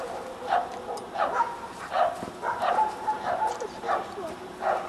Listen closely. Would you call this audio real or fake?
fake